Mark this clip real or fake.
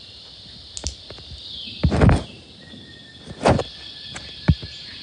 real